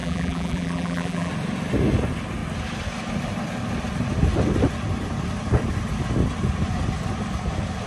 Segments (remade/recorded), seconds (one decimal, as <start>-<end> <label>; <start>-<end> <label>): 0.0-1.3 remade; 1.3-7.9 recorded